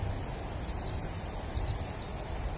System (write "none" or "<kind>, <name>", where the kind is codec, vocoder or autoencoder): none